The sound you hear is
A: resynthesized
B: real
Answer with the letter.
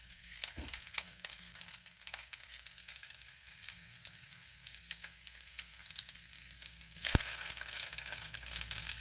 A